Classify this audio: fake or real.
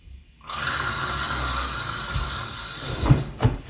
fake